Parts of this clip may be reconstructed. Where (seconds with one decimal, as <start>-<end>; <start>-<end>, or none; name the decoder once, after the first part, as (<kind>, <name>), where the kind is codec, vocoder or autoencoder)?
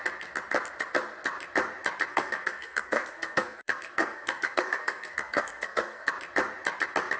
2.1-6.1 (codec, SNAC)